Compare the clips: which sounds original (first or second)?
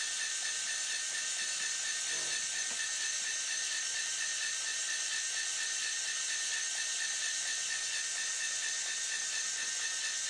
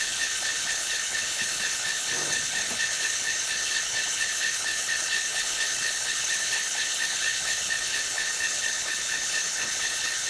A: first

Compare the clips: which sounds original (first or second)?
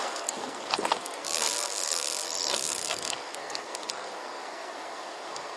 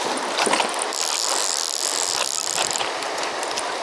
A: second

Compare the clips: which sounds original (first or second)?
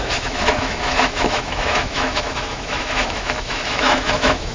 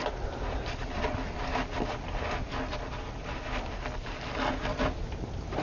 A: second